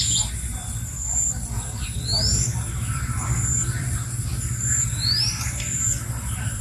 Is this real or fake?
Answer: fake